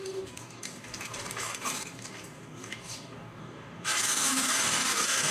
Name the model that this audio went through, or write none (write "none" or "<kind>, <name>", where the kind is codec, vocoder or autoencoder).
codec, DAC